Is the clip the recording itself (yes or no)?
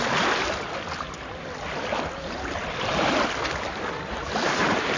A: yes